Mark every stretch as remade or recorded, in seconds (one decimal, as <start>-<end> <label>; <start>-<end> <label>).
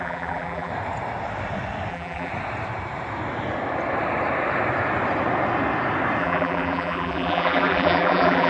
0.0-0.7 remade; 0.7-1.9 recorded; 1.9-2.3 remade; 2.3-6.2 recorded; 6.2-8.5 remade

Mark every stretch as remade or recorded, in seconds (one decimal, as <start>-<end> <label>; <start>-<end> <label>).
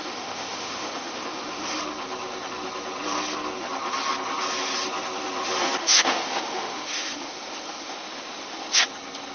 0.0-1.8 remade; 1.8-5.8 recorded; 5.8-8.8 remade; 8.8-9.3 recorded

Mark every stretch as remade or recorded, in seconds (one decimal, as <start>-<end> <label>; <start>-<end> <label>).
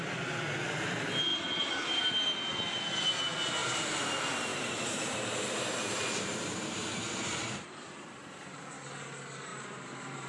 0.0-1.3 recorded; 1.3-2.0 remade; 2.0-3.6 recorded; 3.6-4.1 remade; 4.1-4.5 recorded; 4.5-8.7 remade; 8.7-9.5 recorded; 9.5-10.3 remade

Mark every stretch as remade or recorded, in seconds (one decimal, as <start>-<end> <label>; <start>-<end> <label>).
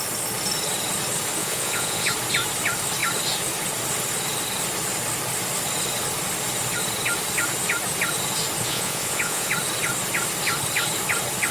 0.0-1.4 recorded; 1.4-2.1 remade; 2.1-8.7 recorded; 8.7-9.5 remade; 9.5-11.5 recorded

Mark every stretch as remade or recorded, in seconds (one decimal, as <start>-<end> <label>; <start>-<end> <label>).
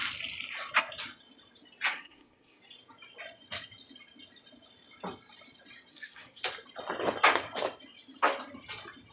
0.0-1.9 recorded; 1.9-2.6 remade; 2.6-5.9 recorded; 5.9-6.4 remade; 6.4-9.1 recorded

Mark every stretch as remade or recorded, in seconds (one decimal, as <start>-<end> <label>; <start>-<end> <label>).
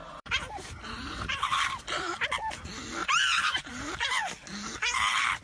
0.0-2.1 remade; 2.1-3.0 recorded; 3.0-3.7 remade; 3.7-5.4 recorded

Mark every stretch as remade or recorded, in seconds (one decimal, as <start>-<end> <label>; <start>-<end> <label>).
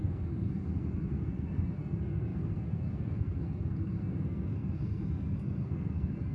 0.0-6.3 remade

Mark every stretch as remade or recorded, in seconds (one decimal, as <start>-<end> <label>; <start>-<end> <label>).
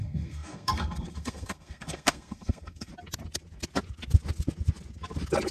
0.0-2.9 remade; 2.9-5.5 recorded